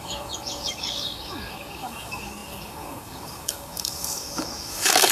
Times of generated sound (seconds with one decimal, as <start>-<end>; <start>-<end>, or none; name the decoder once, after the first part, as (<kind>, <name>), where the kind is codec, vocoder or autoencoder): 0.0-5.1 (codec, DAC)